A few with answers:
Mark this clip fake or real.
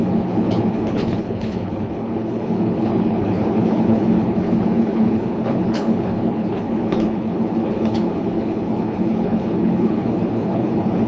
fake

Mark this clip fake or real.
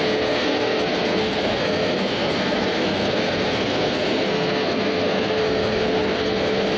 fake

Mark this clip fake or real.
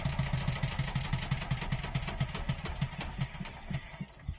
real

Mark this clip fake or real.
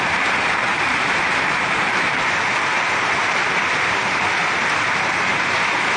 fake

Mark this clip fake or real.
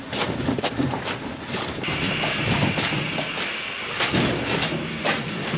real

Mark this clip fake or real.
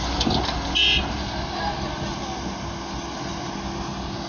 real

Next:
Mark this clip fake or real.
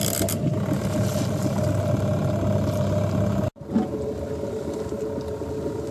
real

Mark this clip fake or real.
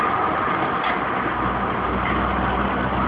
real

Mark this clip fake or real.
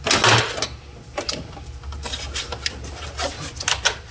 real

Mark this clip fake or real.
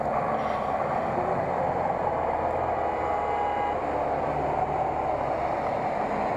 real